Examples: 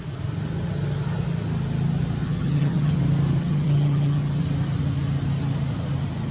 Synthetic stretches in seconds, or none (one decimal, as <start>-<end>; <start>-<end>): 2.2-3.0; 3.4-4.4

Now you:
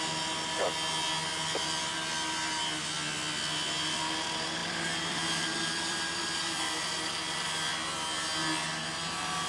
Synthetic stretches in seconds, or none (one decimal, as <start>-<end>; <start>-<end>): 4.6-7.7

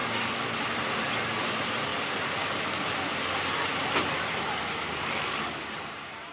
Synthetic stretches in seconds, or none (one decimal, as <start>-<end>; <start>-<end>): 0.6-1.9; 5.7-6.3

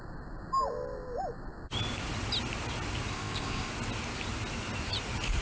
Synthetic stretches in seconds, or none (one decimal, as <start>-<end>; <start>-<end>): 3.1-3.7

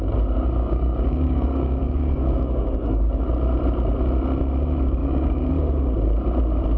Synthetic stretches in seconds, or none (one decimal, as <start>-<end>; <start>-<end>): 0.6-3.1; 5.0-5.5

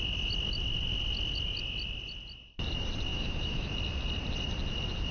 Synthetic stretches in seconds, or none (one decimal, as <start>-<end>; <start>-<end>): 3.1-3.7

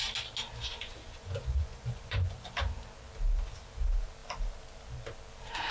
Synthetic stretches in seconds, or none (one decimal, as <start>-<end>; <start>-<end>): 0.7-2.5